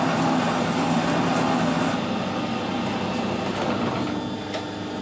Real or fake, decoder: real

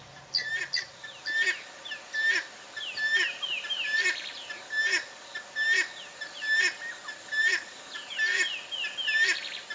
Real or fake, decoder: real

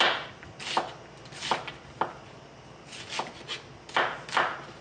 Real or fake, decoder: real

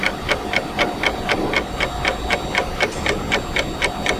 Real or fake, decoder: real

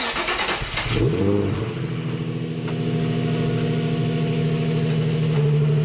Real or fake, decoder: real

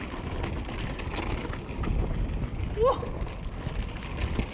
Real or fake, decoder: real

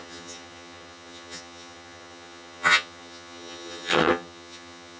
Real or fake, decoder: fake, vocoder, HiFi-GAN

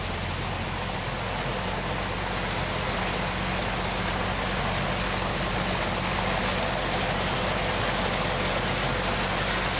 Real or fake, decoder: real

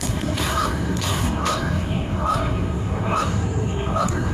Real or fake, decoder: fake, codec, SNAC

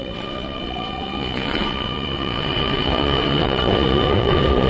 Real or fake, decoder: fake, vocoder, WaveNeXt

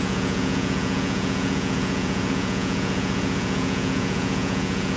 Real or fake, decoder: fake, vocoder, Vocos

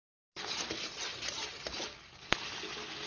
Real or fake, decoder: real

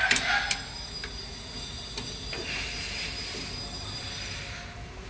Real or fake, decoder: real